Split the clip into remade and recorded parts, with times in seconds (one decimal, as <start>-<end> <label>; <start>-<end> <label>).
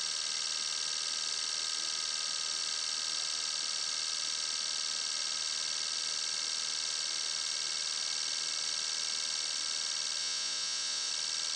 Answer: 0.0-10.2 recorded; 10.2-11.1 remade; 11.1-11.6 recorded